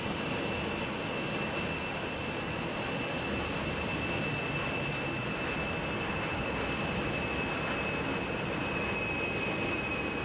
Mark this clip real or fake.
real